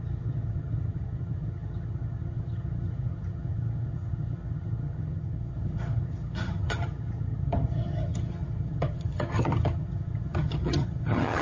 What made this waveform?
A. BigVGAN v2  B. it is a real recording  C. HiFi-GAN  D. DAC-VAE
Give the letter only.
C